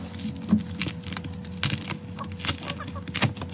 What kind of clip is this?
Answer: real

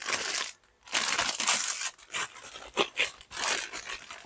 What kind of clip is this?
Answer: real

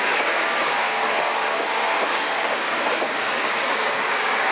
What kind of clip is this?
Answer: fake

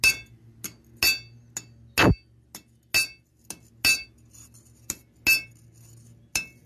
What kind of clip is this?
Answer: real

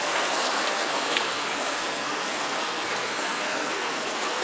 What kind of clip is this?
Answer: fake